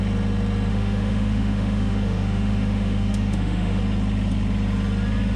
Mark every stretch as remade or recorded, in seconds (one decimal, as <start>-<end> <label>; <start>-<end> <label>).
0.0-0.7 recorded; 0.7-3.8 remade; 3.8-5.4 recorded